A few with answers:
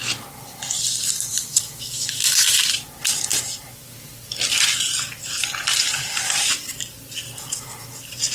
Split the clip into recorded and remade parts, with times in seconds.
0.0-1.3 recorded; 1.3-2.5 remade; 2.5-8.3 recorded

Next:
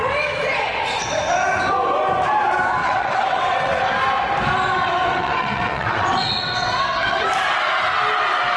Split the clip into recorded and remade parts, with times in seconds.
0.0-2.8 recorded; 2.8-3.8 remade; 3.8-4.8 recorded; 4.8-7.3 remade; 7.3-8.6 recorded

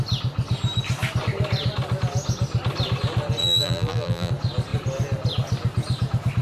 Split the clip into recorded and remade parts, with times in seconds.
0.0-3.4 recorded; 3.4-4.3 remade; 4.3-6.4 recorded

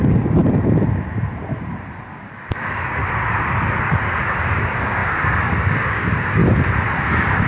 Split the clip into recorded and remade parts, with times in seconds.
0.0-0.4 remade; 0.4-2.5 recorded; 2.5-3.0 remade; 3.0-3.8 recorded; 3.8-6.4 remade; 6.4-7.1 recorded; 7.1-7.5 remade

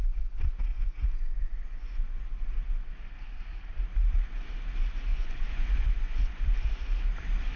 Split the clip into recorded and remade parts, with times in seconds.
0.0-0.7 recorded; 0.7-2.2 remade; 2.2-5.1 recorded; 5.1-6.4 remade; 6.4-7.6 recorded

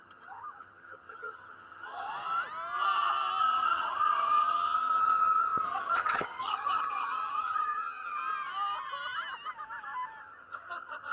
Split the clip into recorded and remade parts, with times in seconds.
0.0-2.1 remade; 2.1-3.4 recorded; 3.4-8.2 remade; 8.2-10.2 recorded; 10.2-11.1 remade

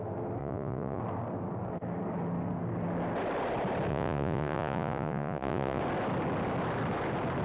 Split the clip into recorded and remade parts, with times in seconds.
0.0-0.4 recorded; 0.4-1.0 remade; 1.0-3.9 recorded; 3.9-5.8 remade; 5.8-7.4 recorded